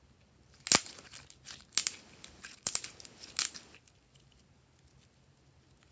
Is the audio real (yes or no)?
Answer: yes